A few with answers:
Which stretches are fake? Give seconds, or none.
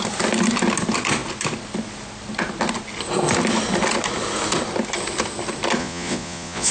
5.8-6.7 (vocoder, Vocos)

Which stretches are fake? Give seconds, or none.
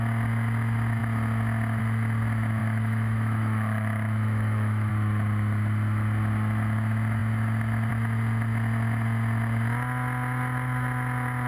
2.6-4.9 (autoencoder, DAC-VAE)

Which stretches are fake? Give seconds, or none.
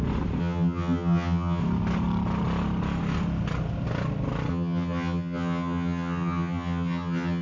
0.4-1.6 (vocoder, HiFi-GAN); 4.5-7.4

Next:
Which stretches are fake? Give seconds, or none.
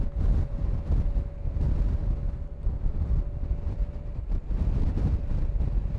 none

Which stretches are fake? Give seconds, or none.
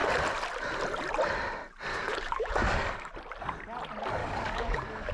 1.9-3.1 (codec, DAC); 4.2-5.1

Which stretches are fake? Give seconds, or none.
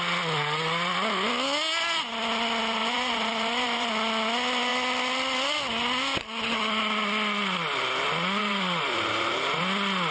2.8-3.9 (vocoder, BigVGAN v2); 8.4-9.6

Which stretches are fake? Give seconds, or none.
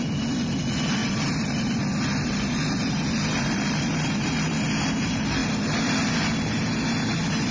1.0-2.9 (vocoder, BigVGAN v2); 5.4-6.1